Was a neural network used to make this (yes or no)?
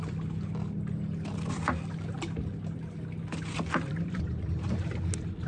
no